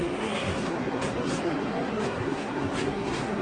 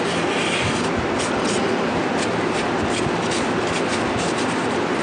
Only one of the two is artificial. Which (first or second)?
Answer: first